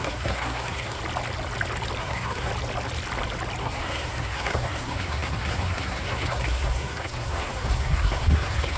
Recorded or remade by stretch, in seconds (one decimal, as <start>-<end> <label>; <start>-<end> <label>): 0.0-1.0 remade; 1.0-2.0 recorded; 2.0-2.5 remade; 2.5-3.6 recorded; 3.6-8.8 remade

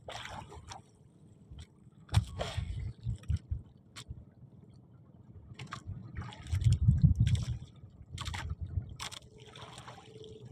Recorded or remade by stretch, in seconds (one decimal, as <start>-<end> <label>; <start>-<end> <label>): 0.0-1.8 recorded; 1.8-2.7 remade; 2.7-10.5 recorded